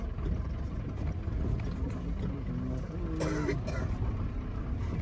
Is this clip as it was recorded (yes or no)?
yes